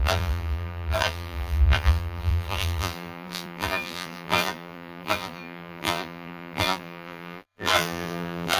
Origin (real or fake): fake